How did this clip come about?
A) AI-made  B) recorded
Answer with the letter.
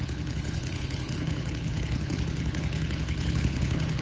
A